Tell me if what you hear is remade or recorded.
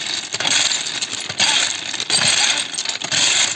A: recorded